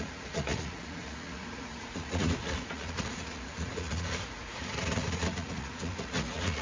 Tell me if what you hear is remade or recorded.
remade